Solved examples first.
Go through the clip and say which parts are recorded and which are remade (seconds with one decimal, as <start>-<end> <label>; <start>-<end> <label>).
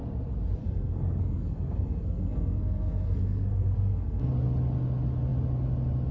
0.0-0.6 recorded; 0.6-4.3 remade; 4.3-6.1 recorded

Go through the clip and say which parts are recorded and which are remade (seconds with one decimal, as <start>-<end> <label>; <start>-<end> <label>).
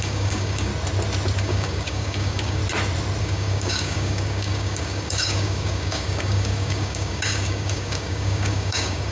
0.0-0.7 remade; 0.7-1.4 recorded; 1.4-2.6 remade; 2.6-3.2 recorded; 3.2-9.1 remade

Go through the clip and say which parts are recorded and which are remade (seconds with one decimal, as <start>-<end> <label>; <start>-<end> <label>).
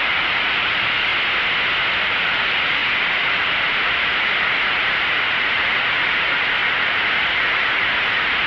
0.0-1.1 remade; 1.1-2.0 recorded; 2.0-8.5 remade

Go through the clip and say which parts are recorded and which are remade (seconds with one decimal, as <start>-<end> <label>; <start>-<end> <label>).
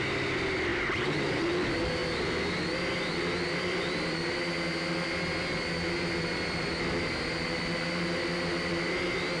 0.0-0.7 recorded; 0.7-1.5 remade; 1.5-9.4 recorded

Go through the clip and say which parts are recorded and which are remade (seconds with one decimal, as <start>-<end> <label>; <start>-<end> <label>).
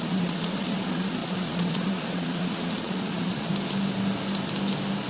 0.0-3.5 remade; 3.5-5.1 recorded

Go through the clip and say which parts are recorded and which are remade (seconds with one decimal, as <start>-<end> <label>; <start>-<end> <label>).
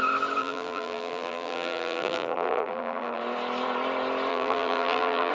0.0-0.4 recorded; 0.4-3.2 remade; 3.2-4.3 recorded; 4.3-5.3 remade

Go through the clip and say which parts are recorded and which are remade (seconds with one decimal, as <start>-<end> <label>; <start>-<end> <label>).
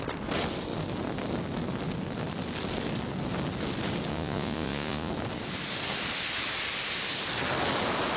0.0-4.1 recorded; 4.1-5.1 remade; 5.1-8.2 recorded